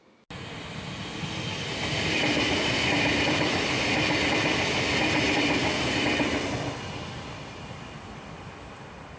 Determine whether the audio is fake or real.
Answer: real